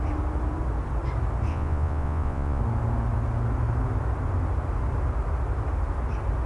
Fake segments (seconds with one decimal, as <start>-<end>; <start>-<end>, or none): 1.5-2.6